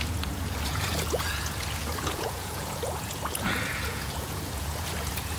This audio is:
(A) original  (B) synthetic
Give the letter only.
B